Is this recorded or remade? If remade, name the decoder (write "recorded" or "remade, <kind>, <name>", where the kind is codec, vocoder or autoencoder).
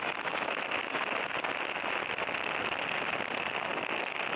recorded